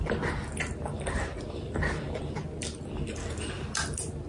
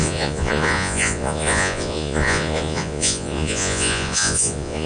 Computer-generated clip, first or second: second